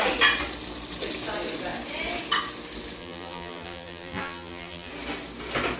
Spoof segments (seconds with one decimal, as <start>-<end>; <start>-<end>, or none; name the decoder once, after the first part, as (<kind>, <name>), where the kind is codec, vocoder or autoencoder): 3.0-4.9 (vocoder, BigVGAN v2)